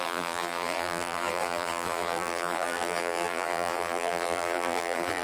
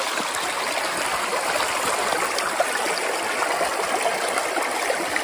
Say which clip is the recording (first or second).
second